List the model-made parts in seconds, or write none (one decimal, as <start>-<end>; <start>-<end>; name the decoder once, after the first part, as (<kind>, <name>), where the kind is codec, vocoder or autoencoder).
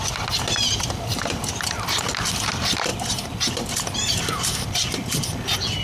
0.0-2.9 (vocoder, BigVGAN v2); 3.5-5.8